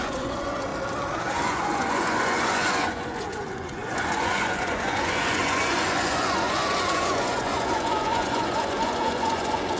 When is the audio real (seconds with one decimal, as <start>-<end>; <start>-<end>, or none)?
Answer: 0.7-1.3